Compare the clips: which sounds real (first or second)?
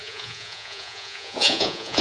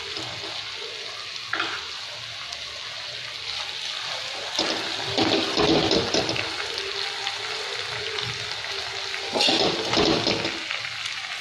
second